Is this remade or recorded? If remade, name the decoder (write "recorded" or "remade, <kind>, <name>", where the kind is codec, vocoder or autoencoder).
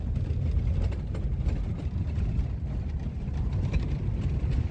recorded